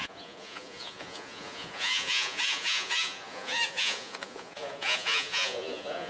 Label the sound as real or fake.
fake